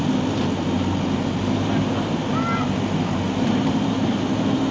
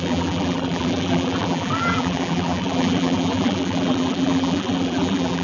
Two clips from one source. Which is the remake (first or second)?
second